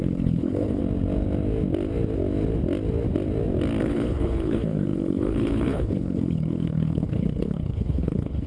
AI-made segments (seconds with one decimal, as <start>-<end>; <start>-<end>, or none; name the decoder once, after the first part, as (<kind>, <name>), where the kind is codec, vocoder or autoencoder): 0.0-0.8 (codec, HILCodec); 3.8-8.5